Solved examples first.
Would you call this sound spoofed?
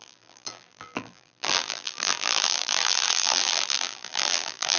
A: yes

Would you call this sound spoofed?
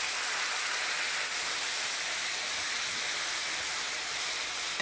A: no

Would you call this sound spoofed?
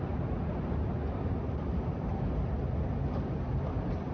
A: no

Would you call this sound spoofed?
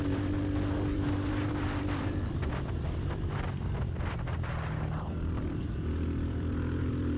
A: yes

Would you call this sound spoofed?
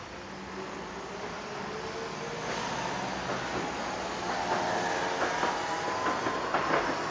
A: no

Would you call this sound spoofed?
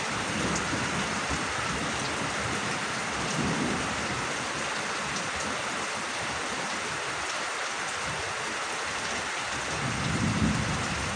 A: yes